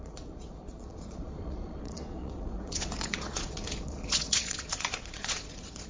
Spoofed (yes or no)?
yes